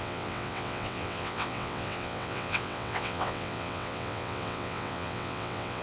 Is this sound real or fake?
fake